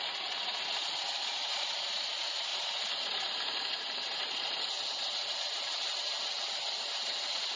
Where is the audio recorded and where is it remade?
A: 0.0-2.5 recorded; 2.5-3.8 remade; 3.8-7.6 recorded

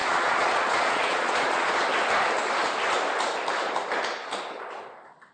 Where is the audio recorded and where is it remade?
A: 0.0-1.9 remade; 1.9-5.3 recorded

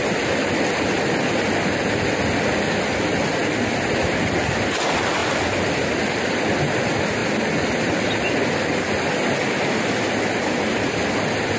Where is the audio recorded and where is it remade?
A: 0.0-11.6 recorded

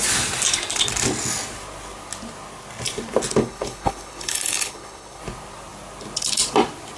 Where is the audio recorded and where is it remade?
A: 0.0-3.4 recorded; 3.4-5.2 remade; 5.2-7.0 recorded

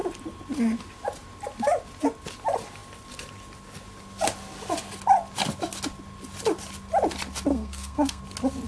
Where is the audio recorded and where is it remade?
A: 0.0-7.5 recorded; 7.5-8.2 remade; 8.2-8.7 recorded

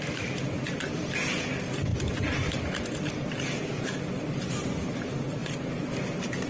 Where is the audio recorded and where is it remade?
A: 0.0-6.5 recorded

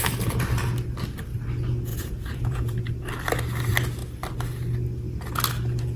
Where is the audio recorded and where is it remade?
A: 0.0-1.9 recorded; 1.9-2.9 remade; 2.9-6.0 recorded